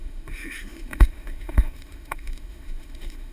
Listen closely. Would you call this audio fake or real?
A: fake